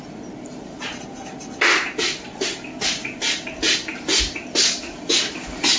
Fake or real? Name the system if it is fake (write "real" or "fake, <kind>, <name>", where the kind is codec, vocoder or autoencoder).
real